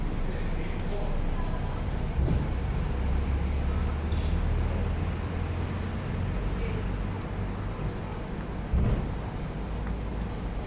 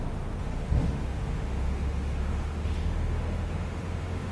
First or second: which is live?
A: first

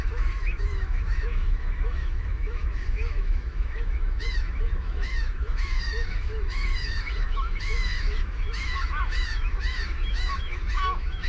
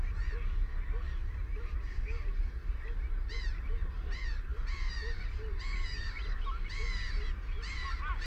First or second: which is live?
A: second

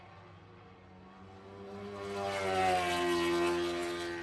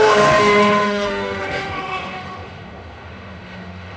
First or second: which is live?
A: first